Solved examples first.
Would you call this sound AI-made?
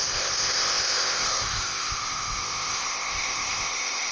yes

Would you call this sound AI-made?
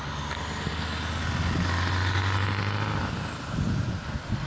no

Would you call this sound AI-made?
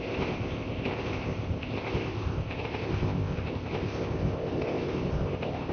yes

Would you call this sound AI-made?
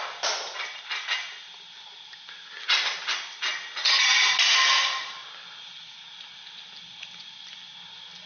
no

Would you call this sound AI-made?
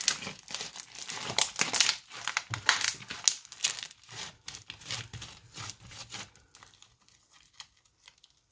no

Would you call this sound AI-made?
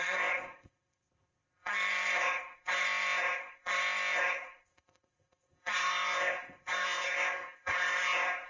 yes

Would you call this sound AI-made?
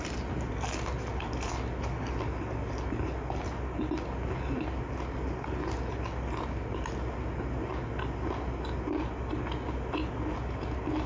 no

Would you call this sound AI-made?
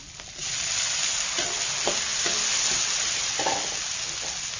no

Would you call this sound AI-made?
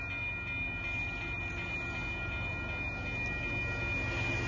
no